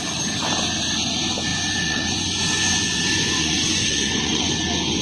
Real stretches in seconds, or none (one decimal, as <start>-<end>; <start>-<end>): 0.0-1.5; 4.5-5.0